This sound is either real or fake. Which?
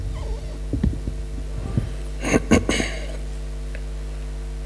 real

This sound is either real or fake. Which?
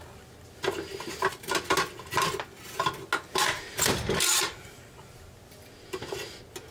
real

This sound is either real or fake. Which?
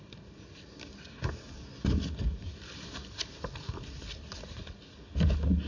real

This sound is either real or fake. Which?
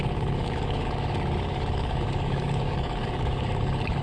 fake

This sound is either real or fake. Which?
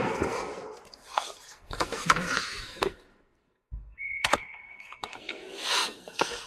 fake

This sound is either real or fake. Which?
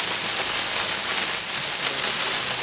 real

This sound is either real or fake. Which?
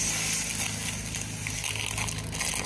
real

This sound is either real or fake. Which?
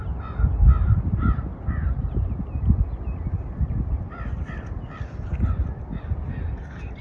real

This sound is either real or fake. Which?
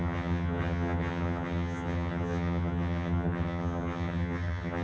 fake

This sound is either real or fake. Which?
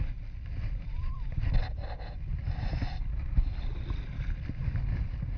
real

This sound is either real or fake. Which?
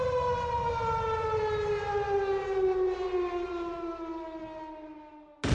real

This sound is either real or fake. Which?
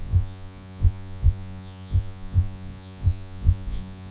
fake